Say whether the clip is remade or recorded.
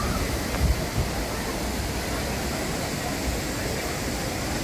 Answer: recorded